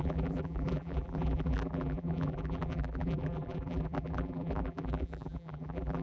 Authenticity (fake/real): fake